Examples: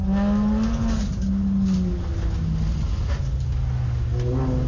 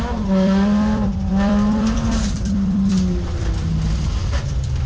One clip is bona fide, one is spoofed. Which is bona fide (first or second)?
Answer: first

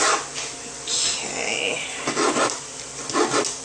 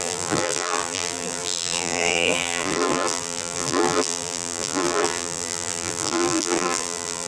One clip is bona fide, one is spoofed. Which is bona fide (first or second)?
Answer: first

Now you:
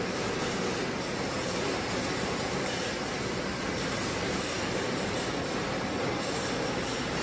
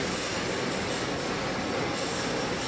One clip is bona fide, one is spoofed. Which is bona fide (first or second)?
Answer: second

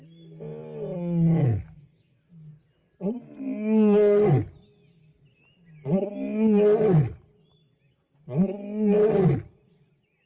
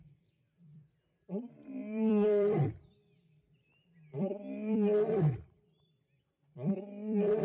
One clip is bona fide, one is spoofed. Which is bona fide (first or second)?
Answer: first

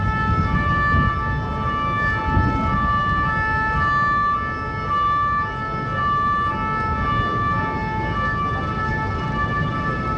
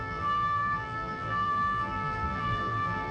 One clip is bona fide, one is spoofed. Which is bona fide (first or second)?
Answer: first